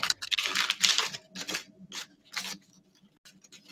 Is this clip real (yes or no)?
yes